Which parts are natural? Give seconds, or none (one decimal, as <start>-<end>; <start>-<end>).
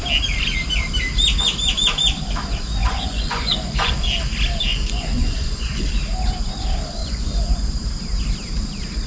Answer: 0.0-2.8; 3.9-4.7; 5.9-7.0; 7.7-9.1